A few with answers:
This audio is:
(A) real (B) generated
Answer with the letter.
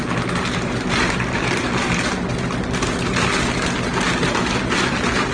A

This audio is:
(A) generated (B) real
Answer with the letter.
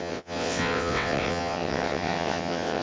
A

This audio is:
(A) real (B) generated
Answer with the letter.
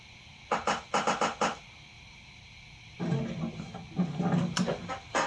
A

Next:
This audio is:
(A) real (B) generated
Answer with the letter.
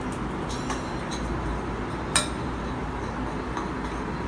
A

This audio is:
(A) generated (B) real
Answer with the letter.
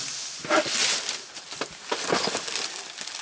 B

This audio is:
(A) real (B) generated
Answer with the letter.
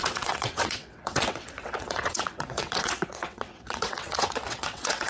B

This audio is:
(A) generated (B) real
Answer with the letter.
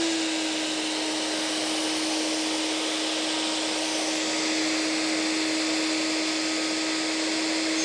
B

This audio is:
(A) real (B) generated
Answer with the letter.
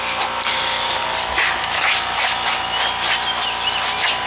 A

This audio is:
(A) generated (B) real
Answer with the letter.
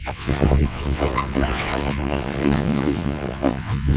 A